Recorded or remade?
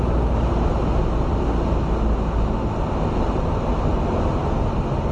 recorded